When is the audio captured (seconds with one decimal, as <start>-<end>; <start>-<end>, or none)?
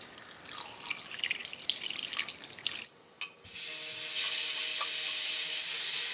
0.0-6.1